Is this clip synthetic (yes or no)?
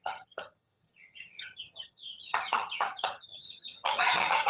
yes